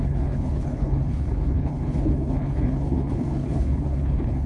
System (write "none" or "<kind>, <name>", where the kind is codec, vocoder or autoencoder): codec, HILCodec